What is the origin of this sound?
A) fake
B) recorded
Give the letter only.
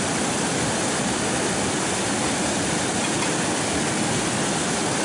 B